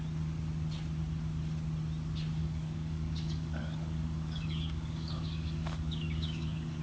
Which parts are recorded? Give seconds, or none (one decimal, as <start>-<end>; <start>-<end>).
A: 0.0-2.4